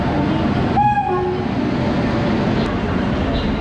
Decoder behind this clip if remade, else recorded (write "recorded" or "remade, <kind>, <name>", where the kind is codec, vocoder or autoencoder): recorded